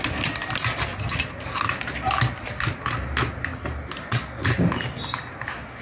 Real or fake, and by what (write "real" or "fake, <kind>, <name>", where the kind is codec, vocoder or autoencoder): real